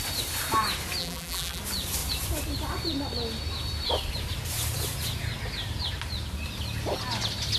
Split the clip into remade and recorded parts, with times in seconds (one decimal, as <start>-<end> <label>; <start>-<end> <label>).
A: 0.0-1.0 recorded; 1.0-1.6 remade; 1.6-7.6 recorded

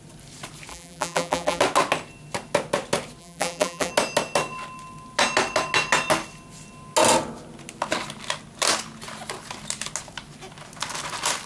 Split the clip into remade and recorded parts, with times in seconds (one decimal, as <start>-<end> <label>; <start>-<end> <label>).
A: 0.0-0.7 recorded; 0.7-1.6 remade; 1.6-3.2 recorded; 3.2-3.9 remade; 3.9-11.5 recorded

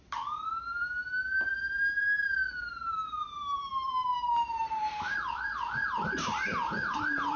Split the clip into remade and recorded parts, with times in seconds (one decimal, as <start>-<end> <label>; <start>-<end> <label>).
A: 0.0-7.4 remade

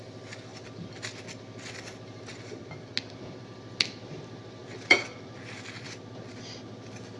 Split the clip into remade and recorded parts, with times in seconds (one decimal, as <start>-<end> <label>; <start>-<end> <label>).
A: 0.0-0.5 recorded; 0.5-1.2 remade; 1.2-2.3 recorded; 2.3-2.9 remade; 2.9-4.6 recorded; 4.6-6.1 remade; 6.1-7.2 recorded